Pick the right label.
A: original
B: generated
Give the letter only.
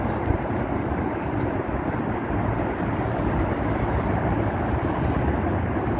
A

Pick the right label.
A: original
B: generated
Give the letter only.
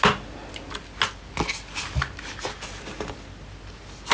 A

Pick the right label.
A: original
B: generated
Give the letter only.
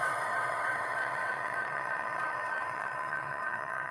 B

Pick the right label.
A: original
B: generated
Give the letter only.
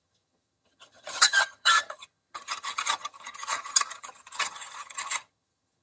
B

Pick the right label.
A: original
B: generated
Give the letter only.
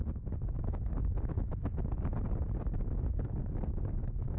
A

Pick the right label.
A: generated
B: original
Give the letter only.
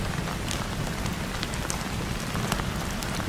B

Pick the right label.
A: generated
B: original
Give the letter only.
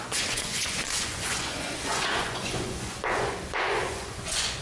A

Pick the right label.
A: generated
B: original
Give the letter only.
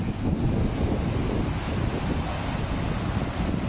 B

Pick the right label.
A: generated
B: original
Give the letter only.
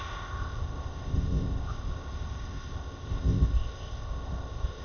A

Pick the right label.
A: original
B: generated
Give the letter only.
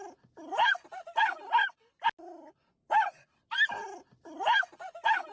A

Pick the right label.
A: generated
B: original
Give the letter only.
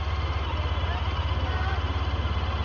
B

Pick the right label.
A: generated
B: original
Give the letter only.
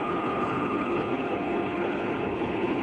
A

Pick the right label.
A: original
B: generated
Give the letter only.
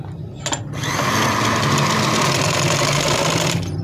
A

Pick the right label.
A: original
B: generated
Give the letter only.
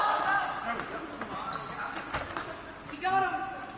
A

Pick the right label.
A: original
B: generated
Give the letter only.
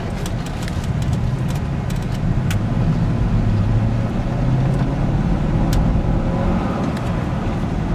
A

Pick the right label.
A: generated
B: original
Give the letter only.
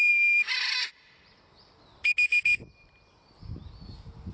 B